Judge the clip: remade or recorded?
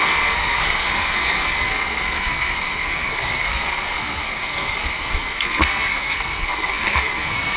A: remade